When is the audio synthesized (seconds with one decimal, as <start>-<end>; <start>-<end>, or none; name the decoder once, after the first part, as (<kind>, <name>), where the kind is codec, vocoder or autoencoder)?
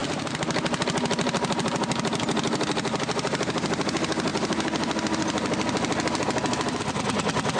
none